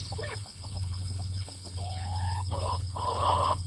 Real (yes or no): no